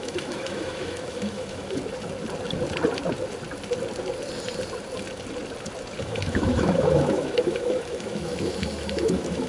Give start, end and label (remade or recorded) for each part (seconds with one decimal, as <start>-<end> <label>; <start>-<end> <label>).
0.0-1.8 remade; 1.8-6.0 recorded; 6.0-9.5 remade

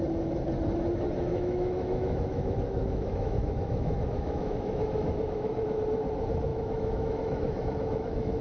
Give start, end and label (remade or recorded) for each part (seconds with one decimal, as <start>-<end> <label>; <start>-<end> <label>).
0.0-1.3 recorded; 1.3-5.8 remade; 5.8-6.5 recorded; 6.5-8.4 remade

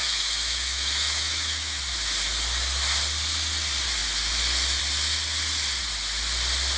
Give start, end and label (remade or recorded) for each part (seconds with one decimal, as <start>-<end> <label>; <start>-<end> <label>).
0.0-1.8 remade; 1.8-6.8 recorded

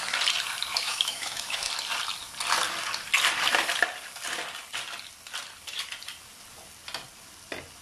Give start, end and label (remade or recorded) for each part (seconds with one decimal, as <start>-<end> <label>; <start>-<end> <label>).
0.0-0.7 recorded; 0.7-1.7 remade; 1.7-7.8 recorded

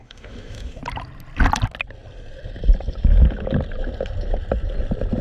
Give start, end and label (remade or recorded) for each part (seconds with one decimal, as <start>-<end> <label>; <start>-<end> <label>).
0.0-0.8 remade; 0.8-5.2 recorded

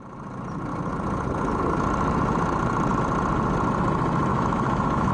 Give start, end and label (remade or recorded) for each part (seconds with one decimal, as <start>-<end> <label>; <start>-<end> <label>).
0.0-4.3 recorded; 4.3-5.1 remade